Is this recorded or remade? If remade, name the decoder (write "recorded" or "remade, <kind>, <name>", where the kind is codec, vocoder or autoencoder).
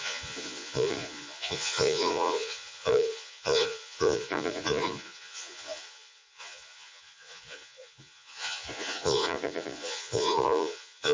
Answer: remade, vocoder, Vocos